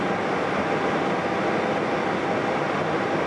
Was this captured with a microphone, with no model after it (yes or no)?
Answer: yes